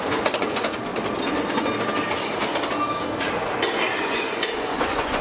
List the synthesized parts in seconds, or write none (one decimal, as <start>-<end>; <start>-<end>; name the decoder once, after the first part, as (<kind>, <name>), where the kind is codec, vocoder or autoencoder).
0.0-0.9 (vocoder, Vocos); 4.0-5.2